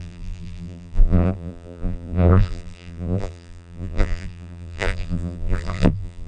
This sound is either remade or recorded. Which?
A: remade